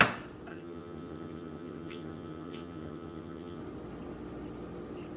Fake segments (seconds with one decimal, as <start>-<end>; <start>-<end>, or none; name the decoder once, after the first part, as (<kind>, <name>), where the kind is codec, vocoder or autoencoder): 0.5-3.6 (vocoder, HiFi-GAN)